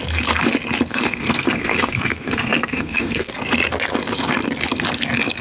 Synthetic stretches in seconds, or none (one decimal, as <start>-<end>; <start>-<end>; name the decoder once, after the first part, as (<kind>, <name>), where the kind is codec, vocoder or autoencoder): 0.9-3.3 (codec, SNAC)